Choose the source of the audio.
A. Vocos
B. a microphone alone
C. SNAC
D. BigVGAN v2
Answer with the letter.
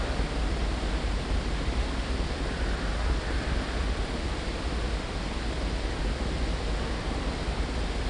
B